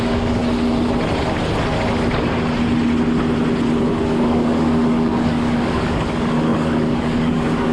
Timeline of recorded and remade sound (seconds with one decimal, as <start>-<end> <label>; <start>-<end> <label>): 0.0-0.4 remade; 0.4-3.8 recorded; 3.8-7.7 remade